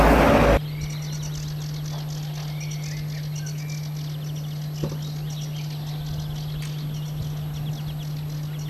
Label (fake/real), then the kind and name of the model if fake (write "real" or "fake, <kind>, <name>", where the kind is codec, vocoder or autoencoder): real